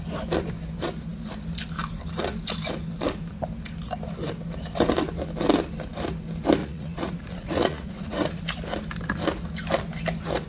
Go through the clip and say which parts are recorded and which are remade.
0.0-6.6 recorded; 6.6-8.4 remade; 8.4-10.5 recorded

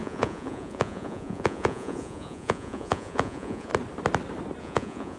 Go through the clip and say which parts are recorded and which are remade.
0.0-3.7 remade; 3.7-4.6 recorded; 4.6-5.2 remade

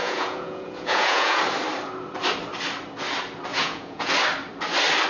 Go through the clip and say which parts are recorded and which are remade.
0.0-1.4 remade; 1.4-3.5 recorded; 3.5-4.1 remade; 4.1-5.1 recorded